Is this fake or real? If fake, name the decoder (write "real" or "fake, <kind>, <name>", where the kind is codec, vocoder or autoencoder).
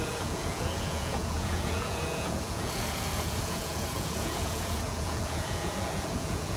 fake, vocoder, Vocos